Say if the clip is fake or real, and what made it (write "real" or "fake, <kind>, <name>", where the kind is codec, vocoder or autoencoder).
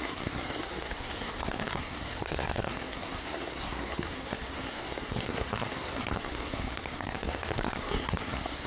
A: fake, codec, SNAC